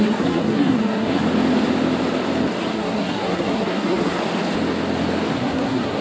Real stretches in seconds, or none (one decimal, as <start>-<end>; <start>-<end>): 1.2-2.7; 4.2-5.3

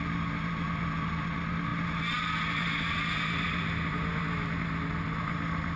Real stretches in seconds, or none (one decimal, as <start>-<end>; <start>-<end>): 0.0-5.8

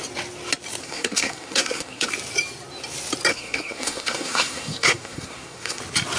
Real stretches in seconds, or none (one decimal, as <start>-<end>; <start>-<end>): 0.0-0.8; 2.1-3.3; 5.8-6.2